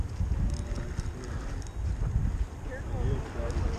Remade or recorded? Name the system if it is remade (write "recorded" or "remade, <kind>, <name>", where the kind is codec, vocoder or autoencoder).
recorded